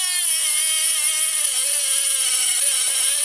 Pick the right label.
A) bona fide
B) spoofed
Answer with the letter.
A